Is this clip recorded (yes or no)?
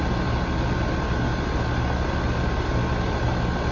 yes